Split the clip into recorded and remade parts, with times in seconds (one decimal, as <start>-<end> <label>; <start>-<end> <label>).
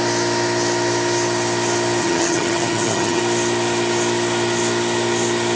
0.0-2.0 recorded; 2.0-3.2 remade; 3.2-5.6 recorded